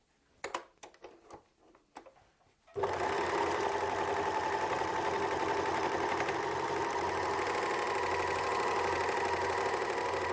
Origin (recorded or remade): recorded